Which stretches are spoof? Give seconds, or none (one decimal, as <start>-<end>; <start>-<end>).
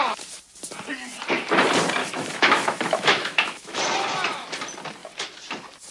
2.0-3.8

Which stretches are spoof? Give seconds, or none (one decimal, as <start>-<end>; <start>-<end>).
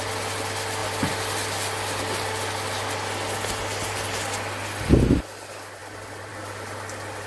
none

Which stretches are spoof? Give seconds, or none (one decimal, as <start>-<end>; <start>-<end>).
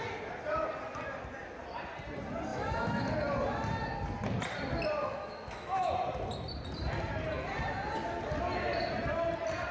2.5-3.0; 5.0-5.9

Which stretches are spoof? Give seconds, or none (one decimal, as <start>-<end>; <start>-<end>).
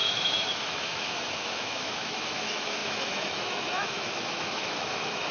0.0-5.3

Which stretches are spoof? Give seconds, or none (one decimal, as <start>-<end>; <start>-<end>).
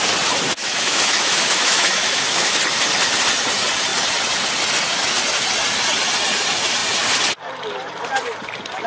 0.6-2.6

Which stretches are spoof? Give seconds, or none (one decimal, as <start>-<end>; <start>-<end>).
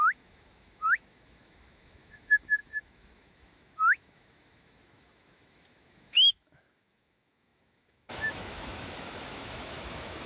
0.0-10.3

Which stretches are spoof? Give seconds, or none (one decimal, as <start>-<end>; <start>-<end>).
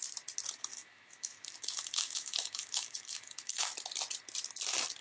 0.7-3.7